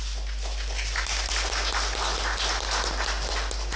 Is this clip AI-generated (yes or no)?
no